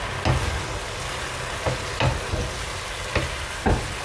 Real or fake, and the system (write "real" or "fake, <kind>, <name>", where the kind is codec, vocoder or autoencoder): real